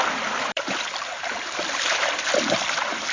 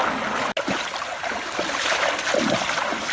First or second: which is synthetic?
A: first